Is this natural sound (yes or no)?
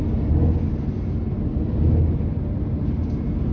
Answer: yes